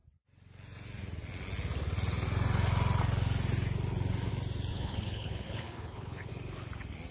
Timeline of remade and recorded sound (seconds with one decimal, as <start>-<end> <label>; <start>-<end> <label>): 0.0-4.7 recorded; 4.7-6.3 remade; 6.3-7.1 recorded